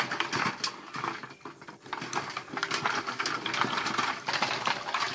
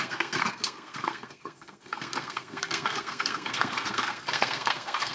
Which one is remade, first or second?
second